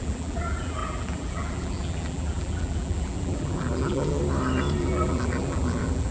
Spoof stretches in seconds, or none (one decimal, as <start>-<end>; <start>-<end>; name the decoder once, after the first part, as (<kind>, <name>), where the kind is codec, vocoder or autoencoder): 0.0-4.2 (vocoder, BigVGAN v2); 4.8-6.1